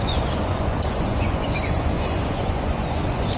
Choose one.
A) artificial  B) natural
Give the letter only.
A